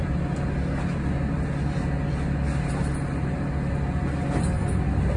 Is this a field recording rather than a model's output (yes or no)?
yes